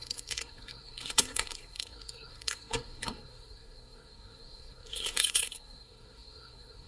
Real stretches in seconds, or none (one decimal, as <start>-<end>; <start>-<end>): none